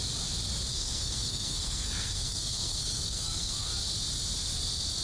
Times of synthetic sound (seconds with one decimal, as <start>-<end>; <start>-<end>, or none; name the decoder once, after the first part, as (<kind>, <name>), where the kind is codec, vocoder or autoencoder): 0.7-3.7 (codec, SNAC)